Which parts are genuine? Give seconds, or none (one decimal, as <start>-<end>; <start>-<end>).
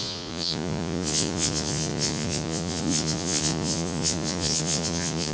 none